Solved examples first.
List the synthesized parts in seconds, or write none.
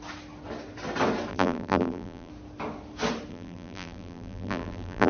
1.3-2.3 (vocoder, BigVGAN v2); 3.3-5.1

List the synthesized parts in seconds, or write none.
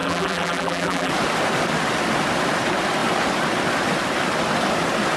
0.0-1.1 (vocoder, BigVGAN v2)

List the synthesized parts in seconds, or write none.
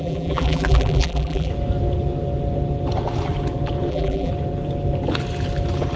0.0-1.5 (vocoder, BigVGAN v2); 3.9-4.3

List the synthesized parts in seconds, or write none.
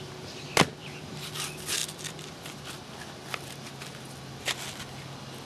0.8-1.3 (vocoder, BigVGAN v2)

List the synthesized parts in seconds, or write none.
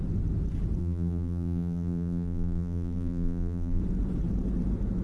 0.8-3.8 (vocoder, BigVGAN v2)